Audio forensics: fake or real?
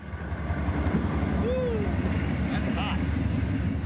real